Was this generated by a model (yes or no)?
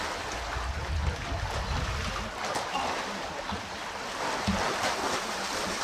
no